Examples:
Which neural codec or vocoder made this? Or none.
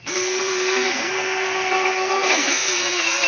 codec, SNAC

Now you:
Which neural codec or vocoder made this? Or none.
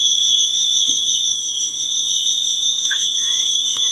autoencoder, DAC-VAE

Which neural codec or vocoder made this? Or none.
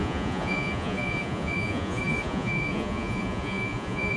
vocoder, Vocos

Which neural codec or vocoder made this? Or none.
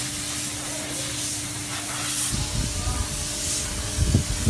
none